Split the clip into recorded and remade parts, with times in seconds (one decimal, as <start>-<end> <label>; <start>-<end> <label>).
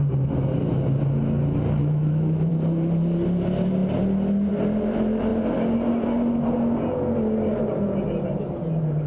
0.0-1.8 recorded; 1.8-2.5 remade; 2.5-9.1 recorded